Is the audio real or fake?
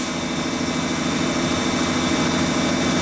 real